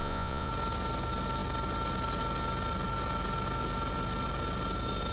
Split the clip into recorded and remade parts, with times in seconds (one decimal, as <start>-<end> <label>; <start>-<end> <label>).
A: 0.0-0.5 remade; 0.5-5.1 recorded